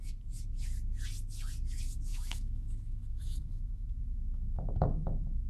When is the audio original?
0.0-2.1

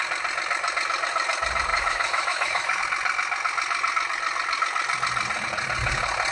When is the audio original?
0.0-1.7; 2.8-6.3

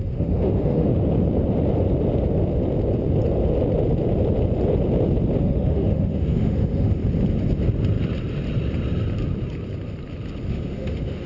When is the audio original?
0.9-5.4; 7.0-10.5